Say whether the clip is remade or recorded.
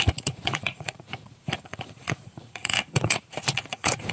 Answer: remade